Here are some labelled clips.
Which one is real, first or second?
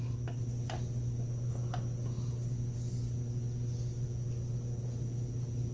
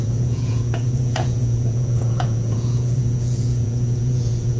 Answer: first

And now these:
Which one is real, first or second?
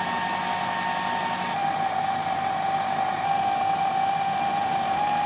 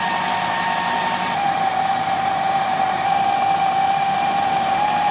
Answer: first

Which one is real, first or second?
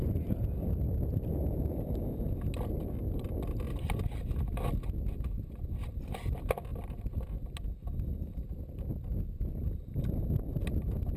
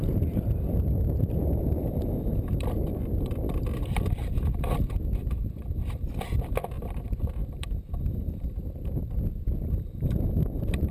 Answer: first